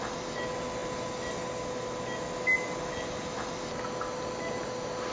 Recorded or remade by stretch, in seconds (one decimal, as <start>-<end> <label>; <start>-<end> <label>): 0.0-5.1 recorded